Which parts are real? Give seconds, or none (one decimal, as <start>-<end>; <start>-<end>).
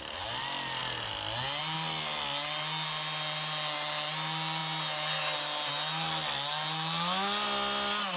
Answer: 0.0-8.2